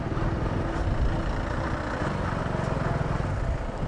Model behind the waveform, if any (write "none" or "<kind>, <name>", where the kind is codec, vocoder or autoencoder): none